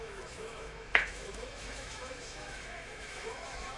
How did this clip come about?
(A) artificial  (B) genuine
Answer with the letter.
A